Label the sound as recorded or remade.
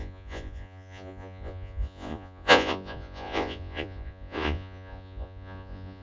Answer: remade